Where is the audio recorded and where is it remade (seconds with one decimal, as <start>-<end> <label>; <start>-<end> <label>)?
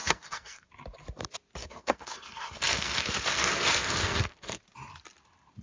0.0-0.7 remade; 0.7-1.6 recorded; 1.6-4.6 remade; 4.6-5.6 recorded